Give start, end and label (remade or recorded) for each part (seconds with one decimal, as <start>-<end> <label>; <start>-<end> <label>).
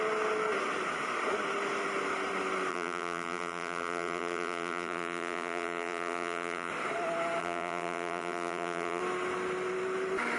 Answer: 0.0-2.7 recorded; 2.7-6.7 remade; 6.7-7.4 recorded; 7.4-9.0 remade; 9.0-10.4 recorded